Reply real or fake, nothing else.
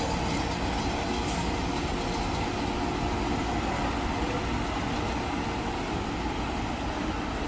real